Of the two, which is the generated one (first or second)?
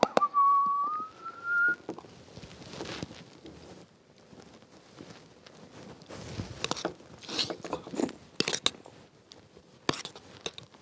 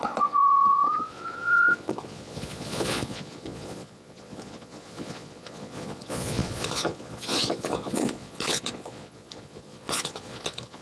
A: second